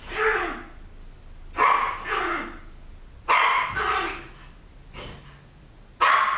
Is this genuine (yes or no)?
yes